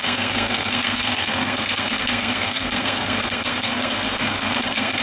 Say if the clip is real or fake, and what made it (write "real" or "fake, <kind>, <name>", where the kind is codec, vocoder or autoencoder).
fake, codec, SNAC